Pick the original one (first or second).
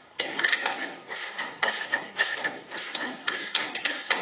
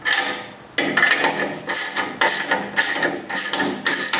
second